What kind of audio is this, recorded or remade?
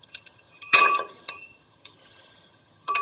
remade